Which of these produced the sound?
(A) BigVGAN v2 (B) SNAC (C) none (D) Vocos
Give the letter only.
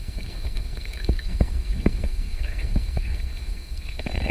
B